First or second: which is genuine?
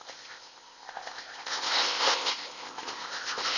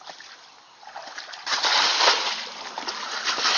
second